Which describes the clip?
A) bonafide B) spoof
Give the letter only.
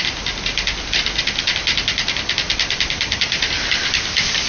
A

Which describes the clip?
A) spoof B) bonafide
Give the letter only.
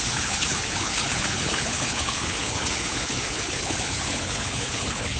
A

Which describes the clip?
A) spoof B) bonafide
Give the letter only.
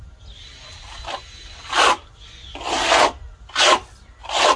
B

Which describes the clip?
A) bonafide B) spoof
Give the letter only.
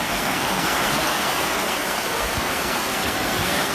B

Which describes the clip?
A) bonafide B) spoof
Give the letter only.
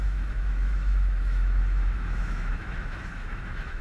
B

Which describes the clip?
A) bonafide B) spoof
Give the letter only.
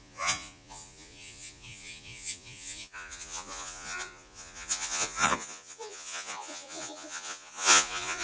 B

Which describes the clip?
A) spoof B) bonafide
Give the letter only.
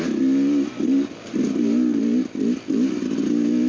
B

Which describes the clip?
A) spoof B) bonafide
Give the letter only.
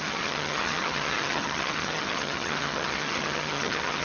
A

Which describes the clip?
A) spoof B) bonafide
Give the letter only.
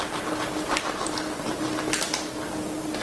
A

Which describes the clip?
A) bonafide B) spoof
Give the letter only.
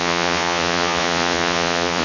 B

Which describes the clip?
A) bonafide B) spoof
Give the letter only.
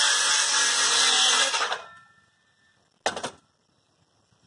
A